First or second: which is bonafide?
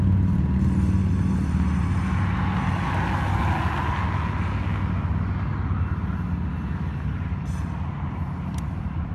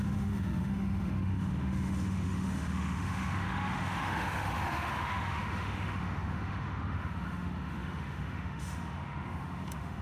first